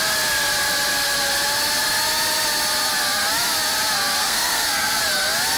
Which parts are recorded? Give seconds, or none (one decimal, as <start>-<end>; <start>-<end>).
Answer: 0.0-4.2; 5.0-5.6

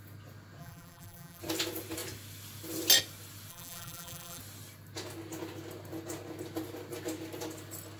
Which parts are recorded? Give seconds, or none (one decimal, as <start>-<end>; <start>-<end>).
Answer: 0.0-0.6; 1.4-3.5; 4.4-8.0

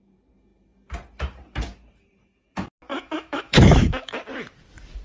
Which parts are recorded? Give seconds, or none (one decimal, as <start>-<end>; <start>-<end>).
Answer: 0.0-2.9; 4.2-5.0

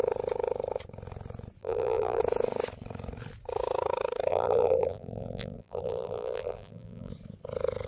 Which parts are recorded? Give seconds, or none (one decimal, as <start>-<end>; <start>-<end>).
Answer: 0.0-1.6; 2.2-4.3; 7.1-7.9